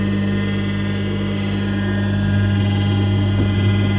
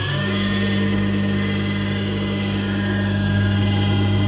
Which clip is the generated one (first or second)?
second